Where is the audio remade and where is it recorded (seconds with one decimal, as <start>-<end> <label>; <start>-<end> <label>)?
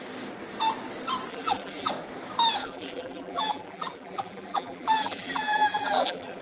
0.0-1.3 recorded; 1.3-1.9 remade; 1.9-2.6 recorded; 2.6-6.4 remade